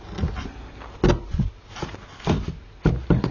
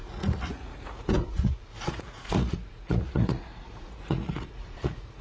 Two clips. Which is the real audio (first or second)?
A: first